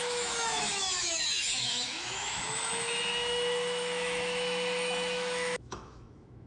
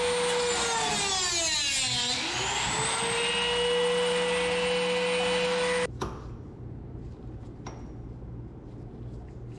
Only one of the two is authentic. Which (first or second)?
second